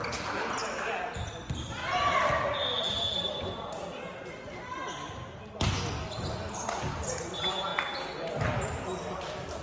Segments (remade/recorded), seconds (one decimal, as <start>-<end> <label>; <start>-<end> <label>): 0.0-0.6 remade; 0.6-1.1 recorded; 1.1-1.8 remade; 1.8-6.8 recorded; 6.8-7.7 remade; 7.7-8.3 recorded; 8.3-9.6 remade